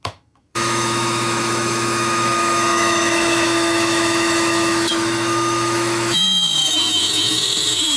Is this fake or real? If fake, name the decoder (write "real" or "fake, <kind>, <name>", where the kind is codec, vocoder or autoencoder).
fake, autoencoder, DAC-VAE